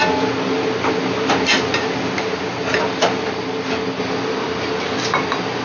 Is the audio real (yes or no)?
yes